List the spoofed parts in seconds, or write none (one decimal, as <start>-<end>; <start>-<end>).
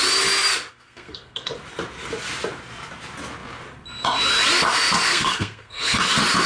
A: 0.7-1.5; 5.1-6.0